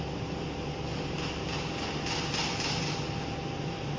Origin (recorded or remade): recorded